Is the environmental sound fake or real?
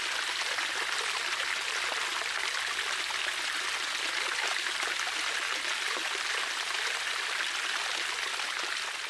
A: real